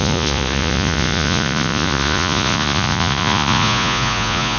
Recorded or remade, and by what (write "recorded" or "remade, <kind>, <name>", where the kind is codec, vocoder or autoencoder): remade, vocoder, Vocos